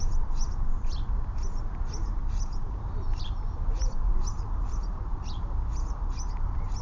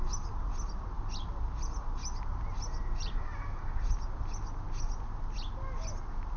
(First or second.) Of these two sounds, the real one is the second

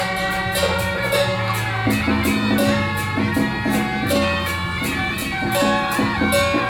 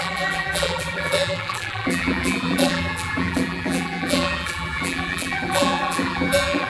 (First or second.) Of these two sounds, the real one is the first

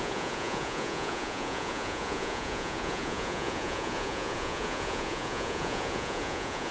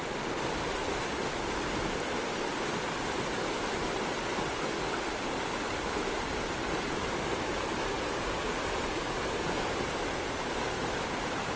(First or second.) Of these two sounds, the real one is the second